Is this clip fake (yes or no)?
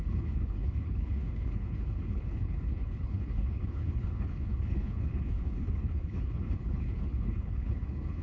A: yes